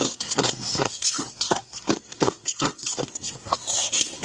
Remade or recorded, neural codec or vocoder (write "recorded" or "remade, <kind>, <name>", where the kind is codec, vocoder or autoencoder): remade, codec, SNAC